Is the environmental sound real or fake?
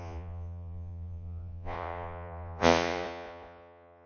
fake